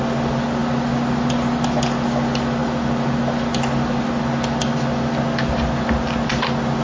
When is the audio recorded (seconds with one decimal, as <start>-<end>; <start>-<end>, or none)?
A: 0.0-6.8